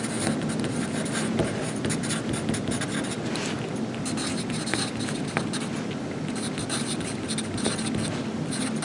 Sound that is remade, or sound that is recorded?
recorded